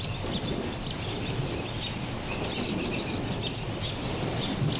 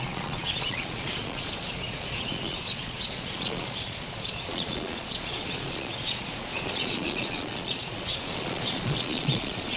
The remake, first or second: second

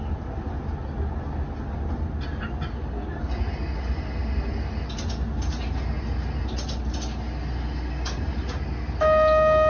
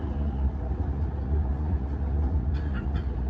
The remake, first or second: second